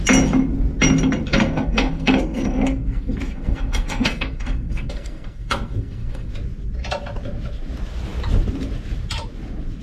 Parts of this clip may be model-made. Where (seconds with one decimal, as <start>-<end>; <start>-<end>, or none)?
1.3-6.3